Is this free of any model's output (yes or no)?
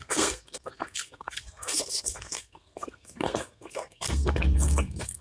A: no